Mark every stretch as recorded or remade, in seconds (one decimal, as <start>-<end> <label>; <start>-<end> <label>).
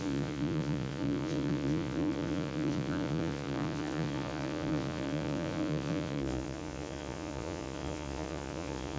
0.0-9.0 remade